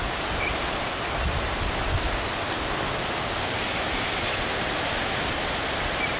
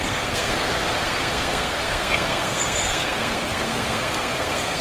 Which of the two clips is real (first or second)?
first